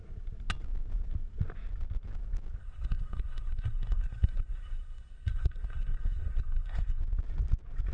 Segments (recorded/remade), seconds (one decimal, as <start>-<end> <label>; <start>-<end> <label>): 0.0-2.6 recorded; 2.6-7.0 remade; 7.0-7.9 recorded